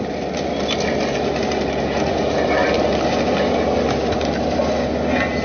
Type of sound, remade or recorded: recorded